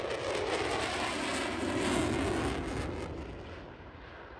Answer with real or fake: real